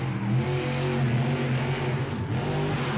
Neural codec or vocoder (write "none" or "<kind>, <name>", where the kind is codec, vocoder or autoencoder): none